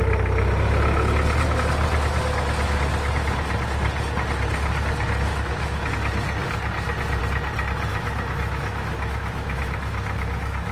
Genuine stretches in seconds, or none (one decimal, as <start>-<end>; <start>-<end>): 0.0-5.3; 5.9-7.9